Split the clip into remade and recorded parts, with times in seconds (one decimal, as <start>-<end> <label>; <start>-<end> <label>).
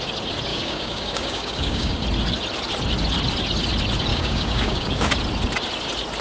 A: 0.0-0.5 recorded; 0.5-2.0 remade; 2.0-4.1 recorded; 4.1-5.1 remade; 5.1-6.2 recorded